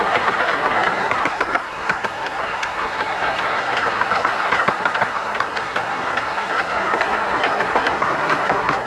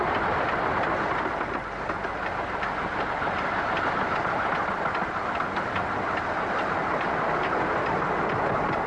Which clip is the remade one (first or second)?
first